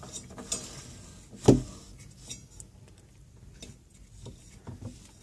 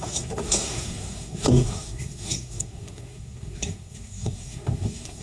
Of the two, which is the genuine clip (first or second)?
first